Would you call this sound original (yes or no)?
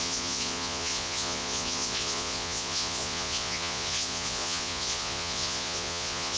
no